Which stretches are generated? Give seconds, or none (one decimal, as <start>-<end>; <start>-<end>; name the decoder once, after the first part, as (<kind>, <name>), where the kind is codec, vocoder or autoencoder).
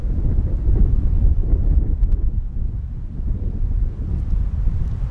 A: 0.0-1.4 (vocoder, BigVGAN v2); 3.1-5.1